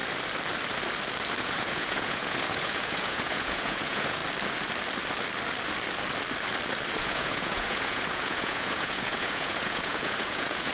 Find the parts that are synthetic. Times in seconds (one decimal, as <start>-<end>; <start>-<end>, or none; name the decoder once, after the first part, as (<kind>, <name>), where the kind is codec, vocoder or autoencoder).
1.4-4.2 (vocoder, Vocos); 7.0-10.7